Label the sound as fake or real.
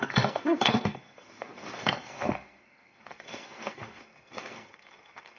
fake